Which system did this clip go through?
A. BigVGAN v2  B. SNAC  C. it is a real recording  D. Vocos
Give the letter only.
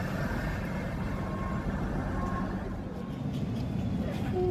C